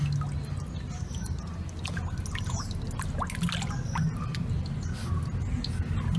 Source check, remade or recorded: recorded